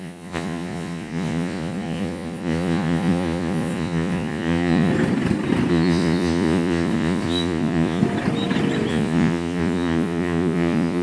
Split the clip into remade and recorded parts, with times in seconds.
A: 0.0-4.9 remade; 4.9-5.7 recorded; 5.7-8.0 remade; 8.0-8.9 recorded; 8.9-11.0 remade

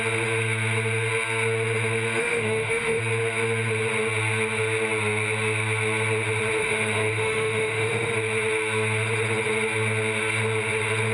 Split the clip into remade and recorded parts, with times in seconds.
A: 0.0-2.2 recorded; 2.2-3.0 remade; 3.0-6.6 recorded; 6.6-8.1 remade; 8.1-11.1 recorded

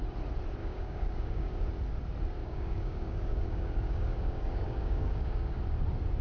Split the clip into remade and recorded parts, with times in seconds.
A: 0.0-0.6 recorded; 0.6-1.7 remade; 1.7-2.4 recorded; 2.4-5.6 remade; 5.6-6.2 recorded

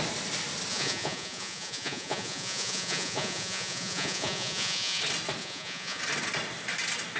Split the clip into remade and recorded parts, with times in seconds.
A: 0.0-0.7 recorded; 0.7-5.0 remade; 5.0-5.4 recorded; 5.4-6.0 remade; 6.0-7.2 recorded

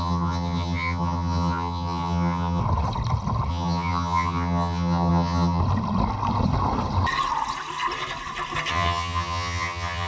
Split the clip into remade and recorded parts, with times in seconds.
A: 0.0-2.6 remade; 2.6-3.5 recorded; 3.5-5.6 remade; 5.6-8.7 recorded; 8.7-10.1 remade

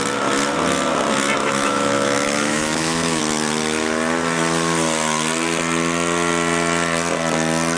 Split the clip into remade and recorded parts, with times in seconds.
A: 0.0-1.4 recorded; 1.4-3.2 remade; 3.2-7.8 recorded

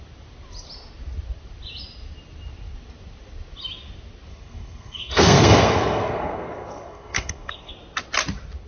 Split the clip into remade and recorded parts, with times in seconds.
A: 0.0-4.3 recorded; 4.3-7.7 remade; 7.7-8.7 recorded